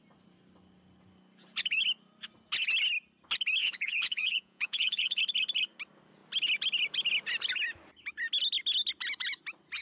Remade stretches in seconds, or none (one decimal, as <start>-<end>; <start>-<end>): 3.6-5.2